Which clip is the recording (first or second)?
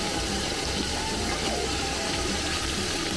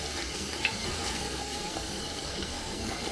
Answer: first